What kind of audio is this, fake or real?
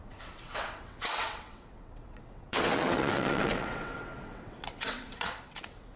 fake